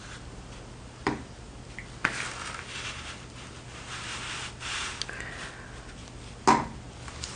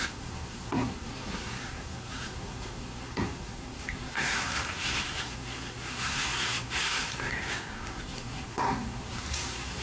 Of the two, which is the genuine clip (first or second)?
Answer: first